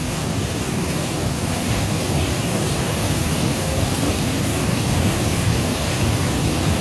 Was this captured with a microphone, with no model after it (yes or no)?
no